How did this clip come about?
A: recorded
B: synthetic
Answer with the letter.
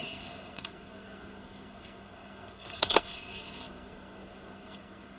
B